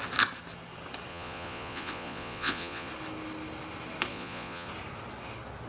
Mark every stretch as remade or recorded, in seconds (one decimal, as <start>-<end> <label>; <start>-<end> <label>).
0.0-1.1 recorded; 1.1-2.9 remade; 2.9-4.1 recorded; 4.1-4.7 remade; 4.7-5.7 recorded

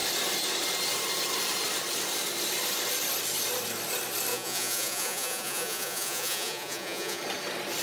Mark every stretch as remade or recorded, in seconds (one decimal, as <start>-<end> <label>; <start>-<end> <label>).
0.0-4.3 recorded; 4.3-7.2 remade; 7.2-7.8 recorded

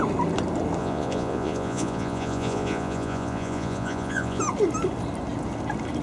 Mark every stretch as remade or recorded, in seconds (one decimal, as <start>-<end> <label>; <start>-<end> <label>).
0.0-0.8 recorded; 0.8-4.4 remade; 4.4-6.0 recorded

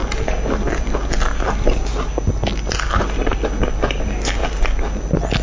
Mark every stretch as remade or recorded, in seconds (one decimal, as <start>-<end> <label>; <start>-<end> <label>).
0.0-5.4 recorded

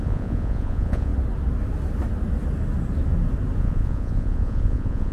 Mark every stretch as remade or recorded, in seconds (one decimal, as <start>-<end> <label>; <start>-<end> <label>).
0.0-1.1 remade; 1.1-3.6 recorded; 3.6-5.1 remade